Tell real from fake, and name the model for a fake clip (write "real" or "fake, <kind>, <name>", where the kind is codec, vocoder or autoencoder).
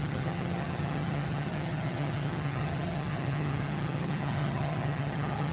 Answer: fake, vocoder, HiFi-GAN